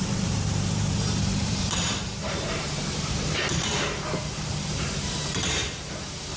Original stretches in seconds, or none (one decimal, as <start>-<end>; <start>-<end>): 5.6-6.4